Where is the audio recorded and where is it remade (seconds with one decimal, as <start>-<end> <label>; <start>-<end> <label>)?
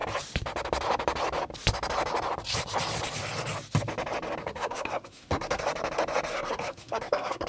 0.0-4.4 recorded; 4.4-5.6 remade; 5.6-6.3 recorded; 6.3-7.5 remade